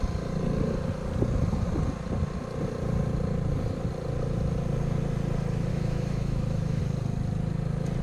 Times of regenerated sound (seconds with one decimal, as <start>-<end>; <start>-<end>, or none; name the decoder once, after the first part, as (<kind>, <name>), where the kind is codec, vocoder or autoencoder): 5.7-6.8 (autoencoder, DAC-VAE)